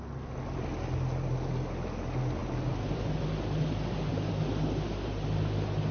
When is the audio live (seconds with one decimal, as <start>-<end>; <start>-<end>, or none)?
0.0-5.9